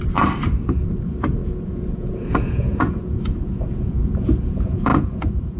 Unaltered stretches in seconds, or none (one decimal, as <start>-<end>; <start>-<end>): 0.0-0.9